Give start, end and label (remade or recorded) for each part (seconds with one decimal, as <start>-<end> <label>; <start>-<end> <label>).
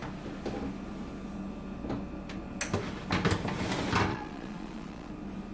0.0-4.1 recorded; 4.1-5.1 remade; 5.1-5.5 recorded